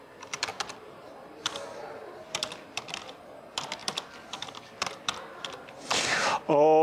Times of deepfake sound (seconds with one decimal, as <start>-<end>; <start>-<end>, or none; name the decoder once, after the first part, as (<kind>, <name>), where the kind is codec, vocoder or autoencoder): 0.0-6.8 (vocoder, BigVGAN v2)